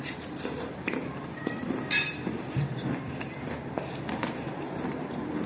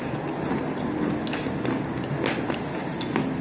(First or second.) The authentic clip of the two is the second